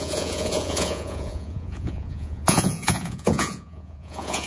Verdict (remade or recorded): remade